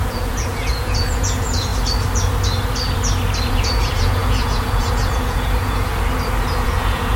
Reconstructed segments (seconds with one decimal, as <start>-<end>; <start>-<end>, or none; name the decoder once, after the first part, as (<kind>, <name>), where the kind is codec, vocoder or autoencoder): 0.0-1.7 (vocoder, Vocos); 3.5-5.9; 6.6-7.2